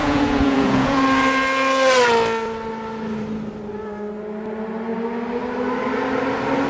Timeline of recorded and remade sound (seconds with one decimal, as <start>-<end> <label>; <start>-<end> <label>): 0.0-1.0 remade; 1.0-6.7 recorded